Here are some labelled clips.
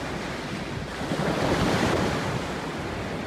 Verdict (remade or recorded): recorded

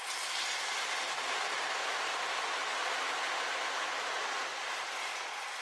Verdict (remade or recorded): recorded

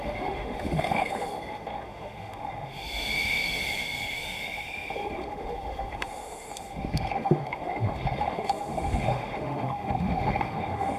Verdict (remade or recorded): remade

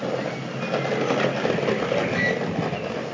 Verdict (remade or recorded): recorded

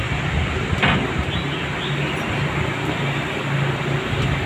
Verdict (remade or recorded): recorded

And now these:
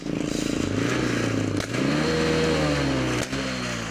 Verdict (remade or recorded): recorded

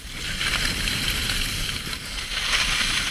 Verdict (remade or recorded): recorded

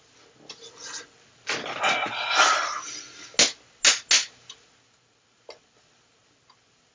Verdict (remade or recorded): recorded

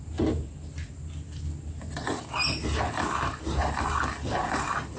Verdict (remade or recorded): recorded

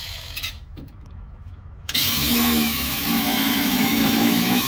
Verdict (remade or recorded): remade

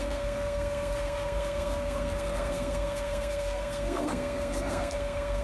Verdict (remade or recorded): remade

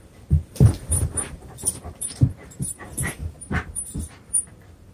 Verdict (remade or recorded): remade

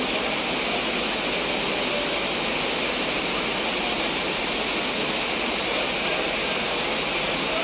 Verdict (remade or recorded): recorded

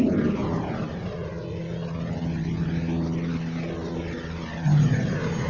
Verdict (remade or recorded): recorded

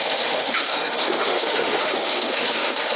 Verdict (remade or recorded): remade